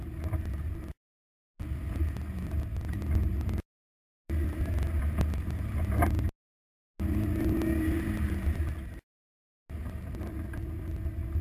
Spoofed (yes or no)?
no